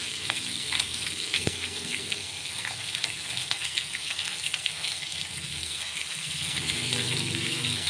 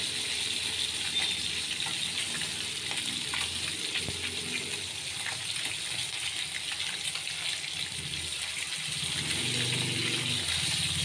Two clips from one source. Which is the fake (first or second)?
first